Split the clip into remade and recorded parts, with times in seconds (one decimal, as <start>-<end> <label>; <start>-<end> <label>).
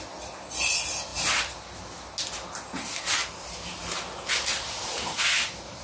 0.0-3.2 recorded; 3.2-5.8 remade